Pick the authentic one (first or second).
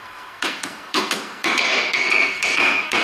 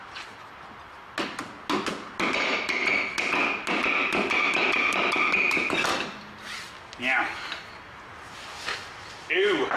second